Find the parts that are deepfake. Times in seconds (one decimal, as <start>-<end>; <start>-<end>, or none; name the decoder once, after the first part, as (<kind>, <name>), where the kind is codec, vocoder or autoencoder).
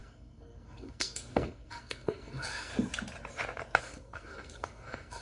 0.0-2.7 (codec, SNAC); 3.8-5.2